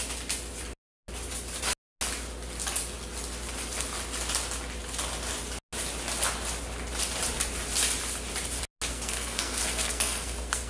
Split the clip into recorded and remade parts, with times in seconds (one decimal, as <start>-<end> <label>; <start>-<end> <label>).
0.0-8.9 recorded; 8.9-10.7 remade